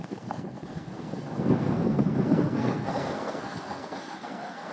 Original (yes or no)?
no